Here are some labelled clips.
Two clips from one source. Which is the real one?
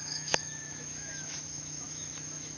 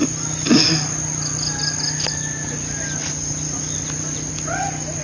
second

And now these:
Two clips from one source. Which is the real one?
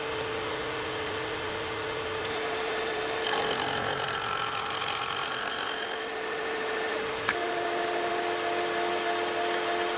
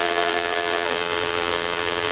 first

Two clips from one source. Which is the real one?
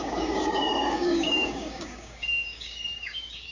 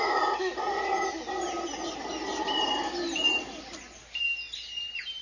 second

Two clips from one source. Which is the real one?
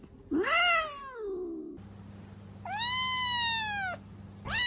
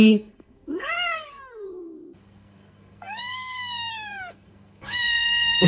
first